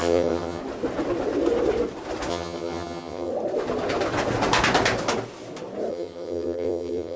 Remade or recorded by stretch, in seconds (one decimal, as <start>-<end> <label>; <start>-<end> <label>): 0.0-0.6 remade; 0.6-2.3 recorded; 2.3-3.3 remade; 3.3-5.9 recorded; 5.9-7.2 remade